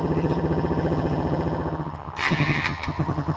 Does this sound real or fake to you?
fake